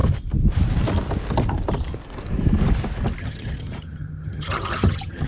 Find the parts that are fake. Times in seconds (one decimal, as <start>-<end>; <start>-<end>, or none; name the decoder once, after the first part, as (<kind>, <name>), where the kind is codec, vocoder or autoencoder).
3.2-5.3 (vocoder, HiFi-GAN)